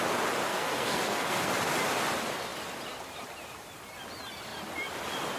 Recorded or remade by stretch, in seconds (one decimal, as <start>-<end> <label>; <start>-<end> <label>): 0.0-0.5 recorded; 0.5-1.5 remade; 1.5-5.4 recorded